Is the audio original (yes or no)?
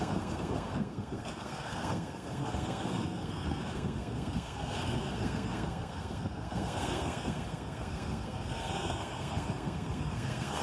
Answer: no